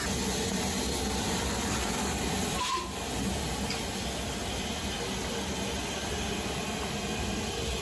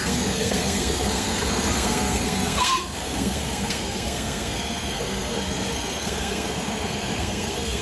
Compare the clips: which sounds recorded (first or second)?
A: first